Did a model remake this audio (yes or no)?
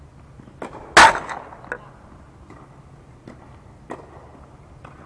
no